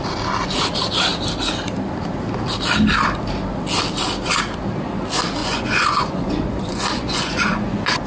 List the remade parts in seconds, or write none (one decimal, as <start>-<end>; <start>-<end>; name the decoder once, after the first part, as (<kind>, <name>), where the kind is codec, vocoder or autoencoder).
5.4-8.1 (vocoder, Vocos)